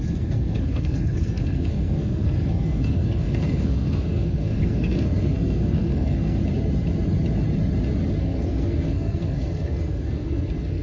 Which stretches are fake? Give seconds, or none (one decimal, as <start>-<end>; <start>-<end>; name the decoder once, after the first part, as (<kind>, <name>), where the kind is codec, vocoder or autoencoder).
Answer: 0.0-6.4 (codec, SNAC); 8.2-10.8